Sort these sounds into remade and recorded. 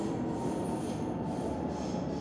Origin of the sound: recorded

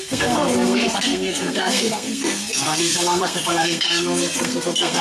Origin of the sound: remade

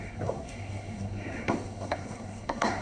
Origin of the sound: remade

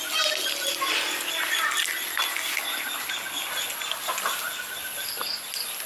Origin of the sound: recorded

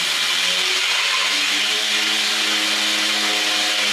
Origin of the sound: recorded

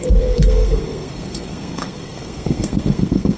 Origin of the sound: remade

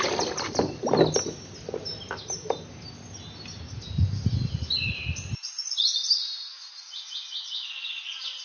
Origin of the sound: recorded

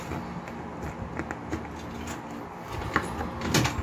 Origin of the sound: recorded